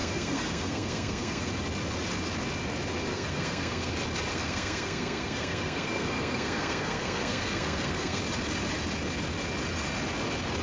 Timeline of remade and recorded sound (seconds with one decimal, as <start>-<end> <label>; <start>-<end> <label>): 0.0-1.5 remade; 1.5-3.1 recorded; 3.1-3.9 remade; 3.9-4.3 recorded; 4.3-8.2 remade; 8.2-10.6 recorded